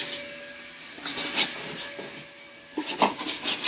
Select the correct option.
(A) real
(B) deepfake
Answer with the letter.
A